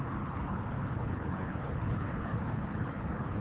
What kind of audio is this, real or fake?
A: fake